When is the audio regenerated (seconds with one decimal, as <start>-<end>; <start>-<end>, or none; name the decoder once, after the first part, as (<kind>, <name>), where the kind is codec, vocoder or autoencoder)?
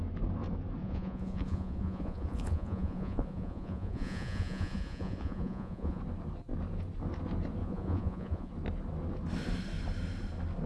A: 0.8-6.0 (vocoder, Vocos); 7.6-8.5